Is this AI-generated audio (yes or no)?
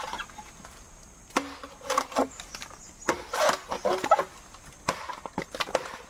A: no